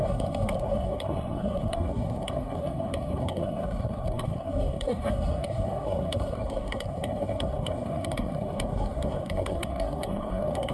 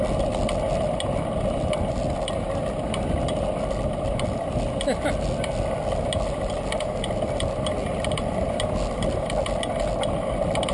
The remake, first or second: first